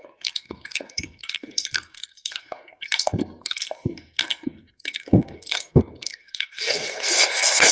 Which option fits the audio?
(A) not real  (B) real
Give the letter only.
A